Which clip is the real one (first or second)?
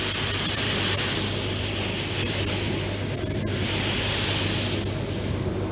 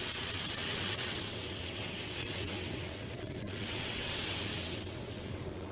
first